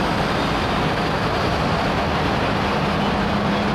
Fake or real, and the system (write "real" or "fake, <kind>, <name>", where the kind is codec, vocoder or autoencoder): real